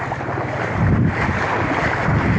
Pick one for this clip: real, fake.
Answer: real